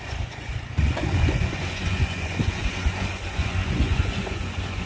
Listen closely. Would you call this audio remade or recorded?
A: remade